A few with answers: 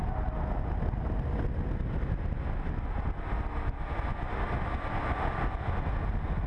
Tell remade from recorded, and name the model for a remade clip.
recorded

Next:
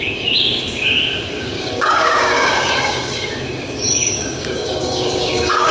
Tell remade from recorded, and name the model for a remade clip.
remade, codec, DAC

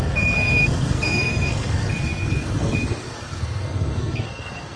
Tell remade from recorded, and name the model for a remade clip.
remade, codec, SNAC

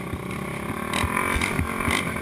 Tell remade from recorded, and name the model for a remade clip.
recorded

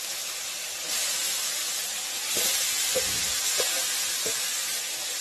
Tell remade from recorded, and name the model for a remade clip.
recorded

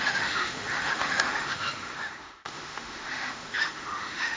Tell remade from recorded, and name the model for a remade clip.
remade, autoencoder, DAC-VAE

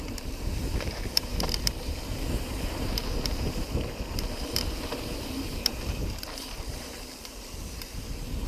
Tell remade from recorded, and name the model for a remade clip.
remade, vocoder, BigVGAN v2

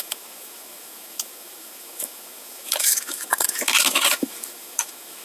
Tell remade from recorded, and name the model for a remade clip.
remade, autoencoder, DAC-VAE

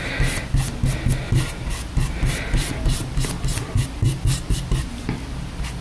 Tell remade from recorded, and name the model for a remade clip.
recorded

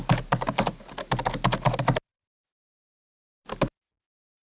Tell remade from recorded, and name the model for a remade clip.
recorded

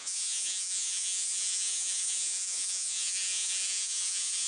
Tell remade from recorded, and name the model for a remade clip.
remade, vocoder, Vocos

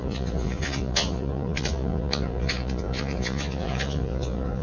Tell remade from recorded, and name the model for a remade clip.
remade, vocoder, Vocos